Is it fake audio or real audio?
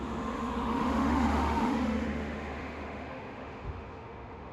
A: fake